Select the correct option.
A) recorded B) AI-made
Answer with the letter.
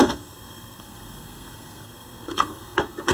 B